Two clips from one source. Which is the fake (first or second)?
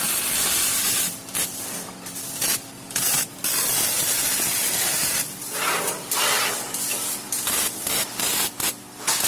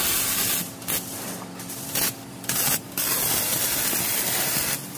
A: first